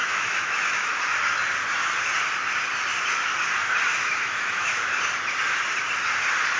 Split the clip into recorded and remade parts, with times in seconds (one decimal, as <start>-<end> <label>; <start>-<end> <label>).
0.0-1.0 remade; 1.0-3.9 recorded; 3.9-4.8 remade; 4.8-6.6 recorded